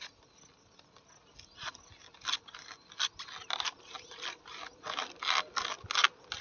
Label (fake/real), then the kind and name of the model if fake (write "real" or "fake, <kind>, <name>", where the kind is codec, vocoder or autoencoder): real